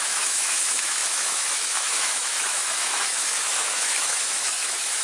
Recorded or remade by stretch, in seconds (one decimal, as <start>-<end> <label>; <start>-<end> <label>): 0.0-5.0 remade